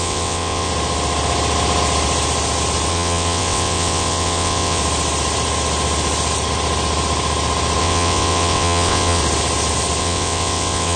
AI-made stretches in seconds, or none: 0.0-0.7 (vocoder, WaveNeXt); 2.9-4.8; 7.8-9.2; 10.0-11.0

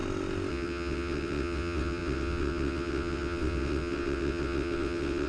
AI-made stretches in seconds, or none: 0.5-5.3 (vocoder, WaveNeXt)